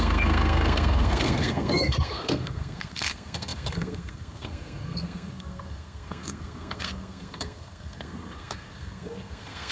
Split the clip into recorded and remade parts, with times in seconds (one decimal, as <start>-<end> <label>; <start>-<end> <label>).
0.0-9.7 remade